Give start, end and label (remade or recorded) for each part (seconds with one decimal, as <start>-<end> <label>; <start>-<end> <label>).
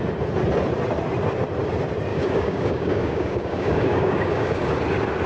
0.0-2.1 recorded; 2.1-4.7 remade; 4.7-5.3 recorded